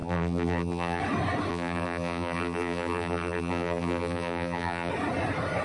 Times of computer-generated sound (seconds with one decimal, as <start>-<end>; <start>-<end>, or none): 0.0-1.0; 1.5-4.9